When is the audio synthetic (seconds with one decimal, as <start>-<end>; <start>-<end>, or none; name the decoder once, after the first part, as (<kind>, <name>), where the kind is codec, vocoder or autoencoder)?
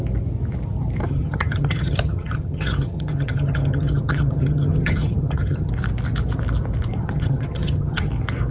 1.1-5.7 (vocoder, HiFi-GAN); 7.0-8.1